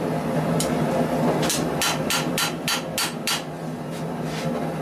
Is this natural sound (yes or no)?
yes